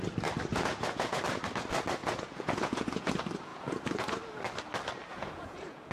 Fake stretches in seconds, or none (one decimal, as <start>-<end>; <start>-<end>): 0.5-1.2; 2.0-3.1; 3.5-4.2; 5.1-5.9